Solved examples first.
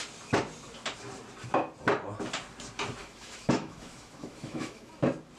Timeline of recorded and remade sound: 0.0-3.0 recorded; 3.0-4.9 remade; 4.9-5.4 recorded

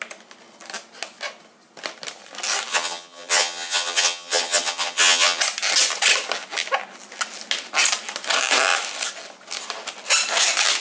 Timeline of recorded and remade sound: 0.0-2.7 recorded; 2.7-5.4 remade; 5.4-10.8 recorded